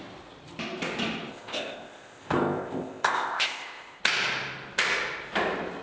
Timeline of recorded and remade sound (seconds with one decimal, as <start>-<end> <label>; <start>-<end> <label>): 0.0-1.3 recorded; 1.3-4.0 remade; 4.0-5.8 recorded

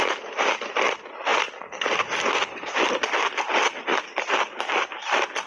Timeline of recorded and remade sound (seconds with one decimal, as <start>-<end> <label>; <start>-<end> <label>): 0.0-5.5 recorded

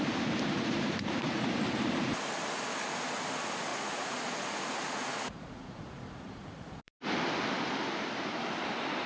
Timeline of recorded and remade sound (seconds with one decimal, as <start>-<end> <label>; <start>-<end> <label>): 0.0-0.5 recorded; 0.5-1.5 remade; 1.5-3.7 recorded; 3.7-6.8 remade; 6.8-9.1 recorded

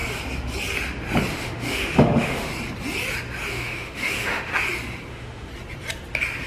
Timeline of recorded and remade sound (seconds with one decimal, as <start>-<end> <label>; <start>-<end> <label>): 0.0-1.3 recorded; 1.3-2.5 remade; 2.5-3.5 recorded; 3.5-4.5 remade; 4.5-5.1 recorded; 5.1-5.5 remade; 5.5-6.5 recorded